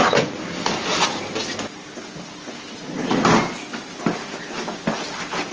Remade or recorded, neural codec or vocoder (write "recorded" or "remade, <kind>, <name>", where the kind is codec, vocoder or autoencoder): recorded